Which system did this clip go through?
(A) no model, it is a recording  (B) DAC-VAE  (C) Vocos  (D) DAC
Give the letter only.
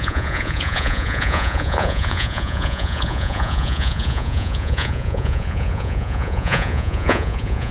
C